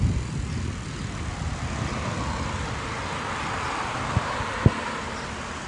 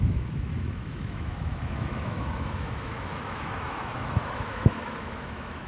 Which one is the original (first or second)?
first